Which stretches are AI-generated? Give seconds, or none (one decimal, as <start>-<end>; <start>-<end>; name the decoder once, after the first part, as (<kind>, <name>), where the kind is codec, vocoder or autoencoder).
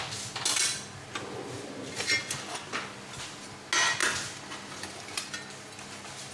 none